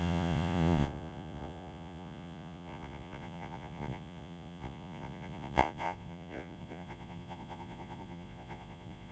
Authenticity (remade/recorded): remade